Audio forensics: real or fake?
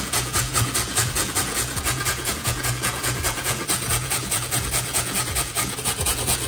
fake